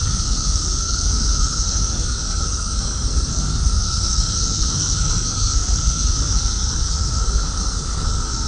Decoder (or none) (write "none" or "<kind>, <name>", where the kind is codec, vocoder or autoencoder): codec, SNAC